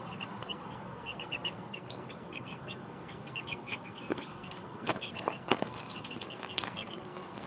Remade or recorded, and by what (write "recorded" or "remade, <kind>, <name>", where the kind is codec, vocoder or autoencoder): remade, codec, SNAC